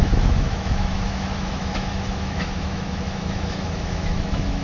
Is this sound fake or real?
fake